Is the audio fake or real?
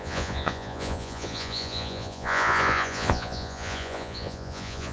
fake